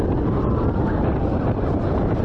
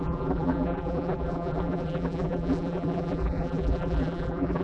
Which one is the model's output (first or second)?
second